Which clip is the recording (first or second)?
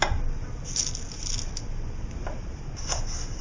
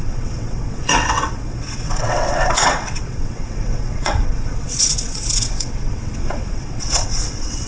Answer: first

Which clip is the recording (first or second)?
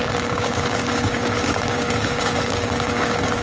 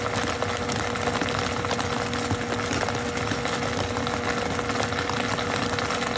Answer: second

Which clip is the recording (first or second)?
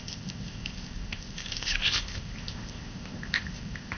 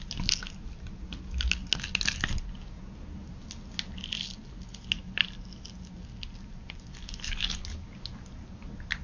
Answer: second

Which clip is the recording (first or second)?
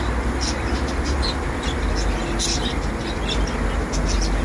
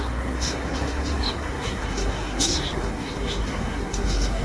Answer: first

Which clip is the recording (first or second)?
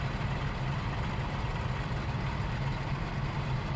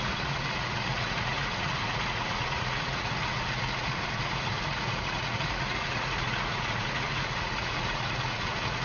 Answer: first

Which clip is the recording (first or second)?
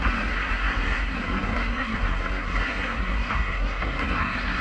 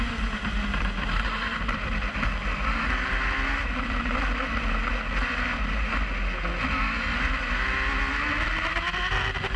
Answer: second